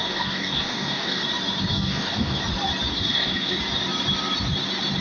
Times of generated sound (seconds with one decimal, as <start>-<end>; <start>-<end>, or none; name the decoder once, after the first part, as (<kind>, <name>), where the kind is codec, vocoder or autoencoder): 0.0-1.2 (codec, DAC); 1.7-2.4; 2.9-3.6